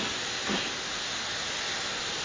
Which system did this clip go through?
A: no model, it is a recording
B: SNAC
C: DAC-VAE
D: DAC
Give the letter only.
A